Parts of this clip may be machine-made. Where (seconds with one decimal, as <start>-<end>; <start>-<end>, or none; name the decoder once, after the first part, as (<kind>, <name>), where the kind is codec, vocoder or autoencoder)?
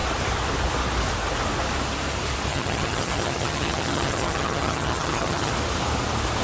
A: 2.5-5.5 (vocoder, HiFi-GAN)